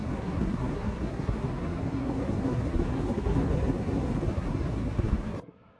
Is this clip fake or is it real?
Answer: fake